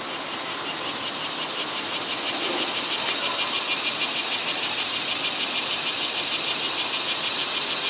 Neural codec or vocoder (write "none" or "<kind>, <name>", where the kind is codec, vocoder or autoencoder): none